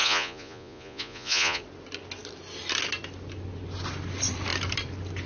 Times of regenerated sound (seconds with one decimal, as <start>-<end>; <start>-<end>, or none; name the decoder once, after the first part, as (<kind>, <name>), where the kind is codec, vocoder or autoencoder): 0.0-1.6 (vocoder, Vocos)